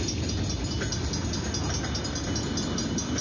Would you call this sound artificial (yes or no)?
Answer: no